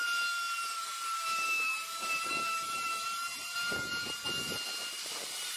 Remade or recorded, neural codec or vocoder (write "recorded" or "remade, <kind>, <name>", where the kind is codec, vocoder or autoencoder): remade, vocoder, BigVGAN v2